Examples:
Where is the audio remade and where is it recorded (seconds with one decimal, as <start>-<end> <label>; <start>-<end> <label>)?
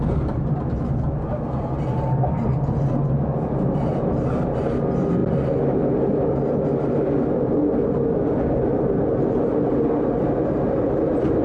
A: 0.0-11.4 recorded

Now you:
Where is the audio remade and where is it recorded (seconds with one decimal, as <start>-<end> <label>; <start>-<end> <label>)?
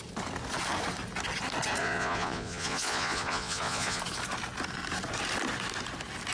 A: 0.0-1.8 recorded; 1.8-4.0 remade; 4.0-6.3 recorded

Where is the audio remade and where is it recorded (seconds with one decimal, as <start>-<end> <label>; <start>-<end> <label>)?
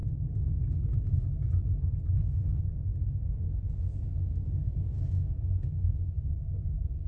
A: 0.0-0.5 recorded; 0.5-1.3 remade; 1.3-2.2 recorded; 2.2-7.1 remade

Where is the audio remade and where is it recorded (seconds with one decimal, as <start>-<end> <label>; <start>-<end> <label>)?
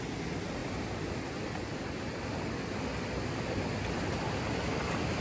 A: 0.0-5.2 recorded